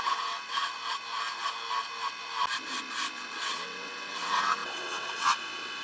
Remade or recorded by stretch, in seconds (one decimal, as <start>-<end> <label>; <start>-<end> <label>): 0.0-0.7 remade; 0.7-3.4 recorded; 3.4-5.8 remade